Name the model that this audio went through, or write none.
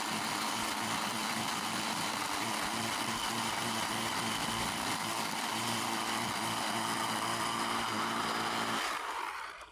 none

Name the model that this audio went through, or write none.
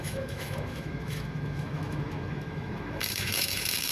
autoencoder, DAC-VAE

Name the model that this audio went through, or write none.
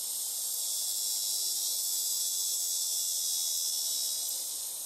none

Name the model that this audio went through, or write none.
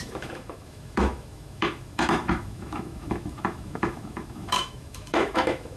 autoencoder, DAC-VAE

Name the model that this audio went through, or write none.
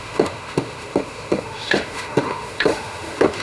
autoencoder, DAC-VAE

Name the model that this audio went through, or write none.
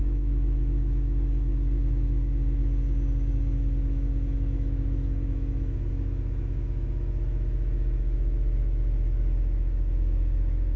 autoencoder, DAC-VAE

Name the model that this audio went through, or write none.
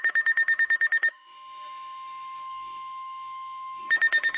autoencoder, DAC-VAE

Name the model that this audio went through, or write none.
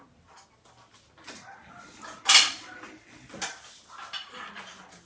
none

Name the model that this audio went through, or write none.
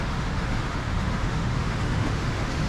autoencoder, DAC-VAE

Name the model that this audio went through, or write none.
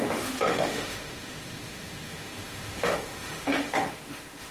autoencoder, DAC-VAE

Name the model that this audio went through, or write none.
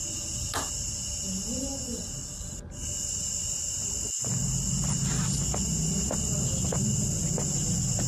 none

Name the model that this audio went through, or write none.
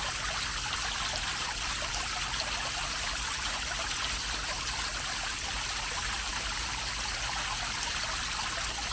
none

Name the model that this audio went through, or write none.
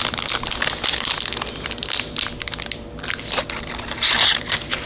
none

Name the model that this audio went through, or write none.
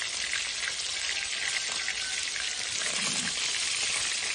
none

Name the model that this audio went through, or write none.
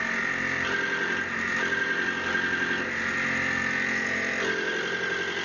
none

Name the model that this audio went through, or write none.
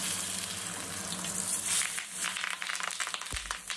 none